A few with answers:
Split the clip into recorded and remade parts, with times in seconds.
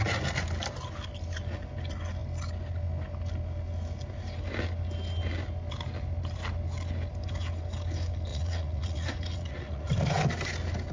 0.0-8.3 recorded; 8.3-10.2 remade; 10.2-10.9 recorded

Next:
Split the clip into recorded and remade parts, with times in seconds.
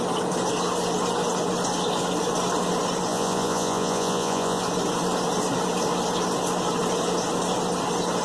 0.0-3.1 recorded; 3.1-4.6 remade; 4.6-8.2 recorded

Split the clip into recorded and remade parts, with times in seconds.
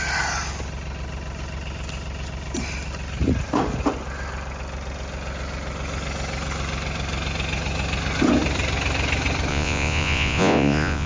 0.0-9.5 recorded; 9.5-11.1 remade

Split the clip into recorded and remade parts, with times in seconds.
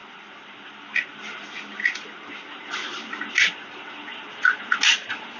0.0-5.4 recorded